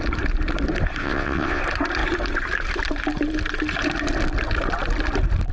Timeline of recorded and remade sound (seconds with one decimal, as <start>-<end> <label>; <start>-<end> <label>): 0.0-1.0 recorded; 1.0-1.6 remade; 1.6-5.5 recorded